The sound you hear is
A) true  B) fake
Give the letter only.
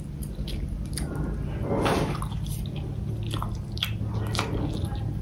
A